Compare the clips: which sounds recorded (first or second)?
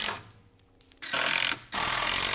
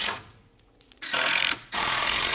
first